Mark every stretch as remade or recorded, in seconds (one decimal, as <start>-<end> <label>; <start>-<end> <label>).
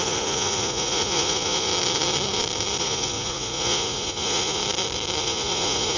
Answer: 0.0-1.7 remade; 1.7-2.8 recorded; 2.8-4.6 remade; 4.6-5.2 recorded; 5.2-6.0 remade